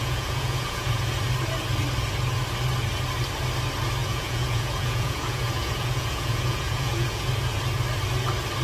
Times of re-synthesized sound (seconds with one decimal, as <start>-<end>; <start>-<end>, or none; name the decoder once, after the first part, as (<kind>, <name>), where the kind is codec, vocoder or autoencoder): 0.0-1.2 (vocoder, Vocos); 4.0-7.3